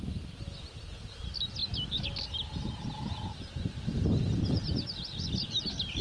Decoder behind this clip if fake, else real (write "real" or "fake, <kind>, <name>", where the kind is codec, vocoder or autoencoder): real